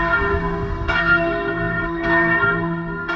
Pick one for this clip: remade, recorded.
remade